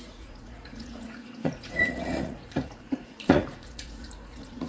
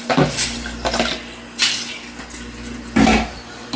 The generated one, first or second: first